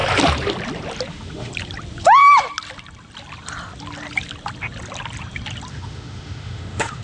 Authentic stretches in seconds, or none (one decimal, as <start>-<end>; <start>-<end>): 0.0-1.1; 1.5-5.7